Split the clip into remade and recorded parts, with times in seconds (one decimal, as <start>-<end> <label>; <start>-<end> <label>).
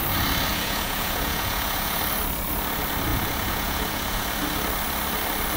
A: 0.0-0.5 recorded; 0.5-2.0 remade; 2.0-3.1 recorded; 3.1-4.3 remade; 4.3-5.6 recorded